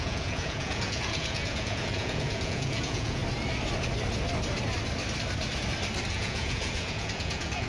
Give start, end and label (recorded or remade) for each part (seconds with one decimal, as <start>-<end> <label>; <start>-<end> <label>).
0.0-3.2 remade; 3.2-6.1 recorded; 6.1-7.7 remade